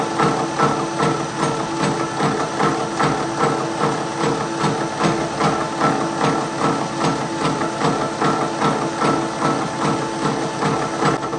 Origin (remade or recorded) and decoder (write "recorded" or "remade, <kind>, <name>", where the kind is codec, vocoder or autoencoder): recorded